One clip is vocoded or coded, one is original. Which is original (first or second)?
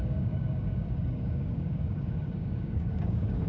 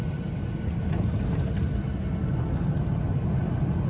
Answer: second